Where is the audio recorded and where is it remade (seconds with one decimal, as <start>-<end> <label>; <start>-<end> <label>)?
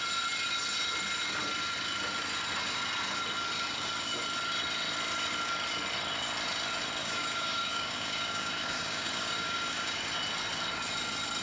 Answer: 0.0-7.0 recorded; 7.0-10.0 remade; 10.0-11.4 recorded